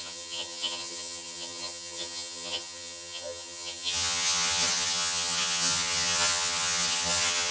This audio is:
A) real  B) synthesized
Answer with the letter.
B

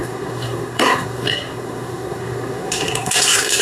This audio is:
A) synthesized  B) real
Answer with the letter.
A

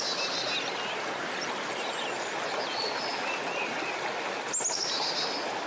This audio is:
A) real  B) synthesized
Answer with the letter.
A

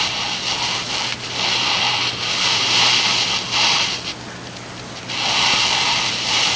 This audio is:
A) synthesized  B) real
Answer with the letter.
B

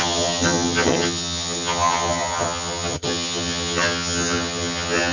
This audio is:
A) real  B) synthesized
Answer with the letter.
B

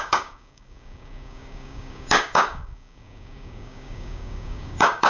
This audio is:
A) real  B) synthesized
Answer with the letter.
B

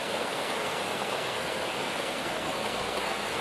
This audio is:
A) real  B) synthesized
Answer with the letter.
B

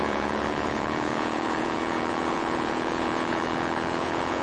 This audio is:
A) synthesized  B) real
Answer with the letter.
A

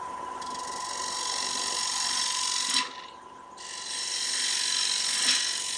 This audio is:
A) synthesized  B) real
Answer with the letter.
B